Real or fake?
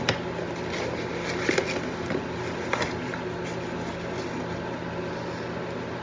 real